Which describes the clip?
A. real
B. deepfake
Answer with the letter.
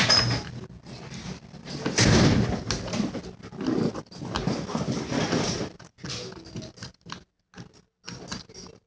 A